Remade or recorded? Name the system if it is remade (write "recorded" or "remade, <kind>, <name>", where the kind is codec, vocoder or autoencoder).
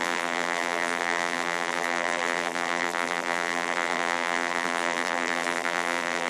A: remade, vocoder, BigVGAN v2